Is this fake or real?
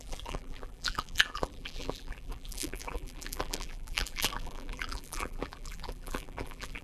fake